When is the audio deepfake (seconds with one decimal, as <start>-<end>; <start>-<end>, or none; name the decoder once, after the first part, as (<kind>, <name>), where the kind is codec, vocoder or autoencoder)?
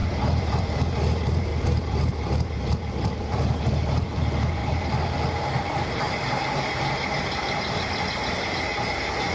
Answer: 0.0-0.8 (vocoder, BigVGAN v2); 1.5-3.1; 4.6-6.6